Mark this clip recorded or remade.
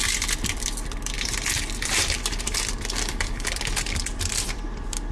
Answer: remade